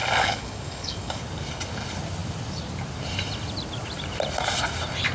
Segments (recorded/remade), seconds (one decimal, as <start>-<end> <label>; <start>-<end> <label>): 0.0-1.2 remade; 1.2-5.1 recorded